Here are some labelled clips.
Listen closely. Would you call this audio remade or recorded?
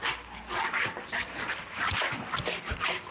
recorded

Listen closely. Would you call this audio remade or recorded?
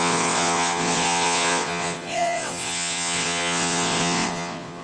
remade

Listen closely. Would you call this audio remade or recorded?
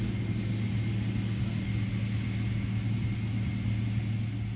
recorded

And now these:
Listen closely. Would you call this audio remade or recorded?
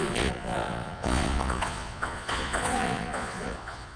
remade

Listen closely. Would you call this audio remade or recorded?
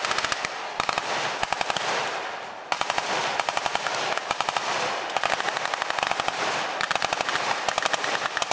recorded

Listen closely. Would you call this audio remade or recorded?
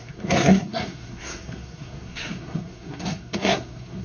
remade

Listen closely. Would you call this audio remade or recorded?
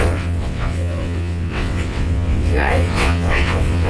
remade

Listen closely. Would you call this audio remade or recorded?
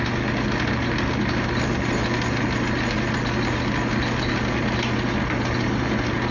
recorded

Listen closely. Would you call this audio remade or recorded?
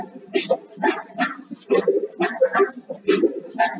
recorded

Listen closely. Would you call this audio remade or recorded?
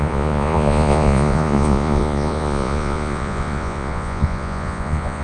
remade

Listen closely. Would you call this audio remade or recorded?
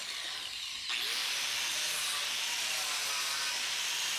recorded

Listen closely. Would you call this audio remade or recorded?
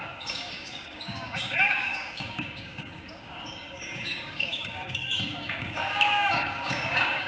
remade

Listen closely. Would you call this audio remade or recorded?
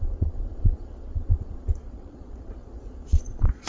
remade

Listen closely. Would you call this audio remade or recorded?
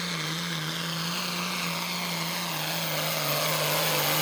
recorded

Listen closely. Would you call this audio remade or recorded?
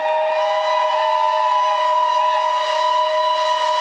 recorded